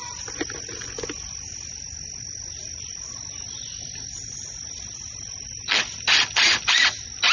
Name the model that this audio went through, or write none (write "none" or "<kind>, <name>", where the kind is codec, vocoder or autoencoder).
none